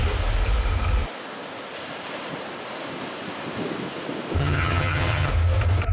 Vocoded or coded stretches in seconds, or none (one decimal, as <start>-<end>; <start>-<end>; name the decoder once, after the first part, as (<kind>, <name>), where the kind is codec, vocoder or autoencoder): 4.4-5.3 (vocoder, HiFi-GAN)